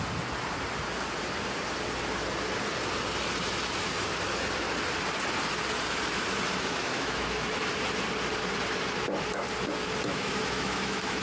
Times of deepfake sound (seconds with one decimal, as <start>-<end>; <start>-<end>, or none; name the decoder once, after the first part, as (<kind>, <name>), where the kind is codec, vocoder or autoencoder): 6.5-7.6 (autoencoder, DAC-VAE); 10.1-11.2